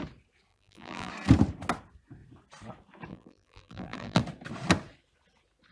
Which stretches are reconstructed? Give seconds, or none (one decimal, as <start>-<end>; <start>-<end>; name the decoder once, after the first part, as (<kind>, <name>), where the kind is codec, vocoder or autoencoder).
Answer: 0.5-1.1 (vocoder, BigVGAN v2); 3.1-4.2